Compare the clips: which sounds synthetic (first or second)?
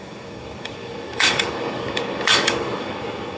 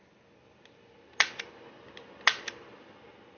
first